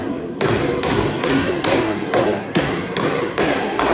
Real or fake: fake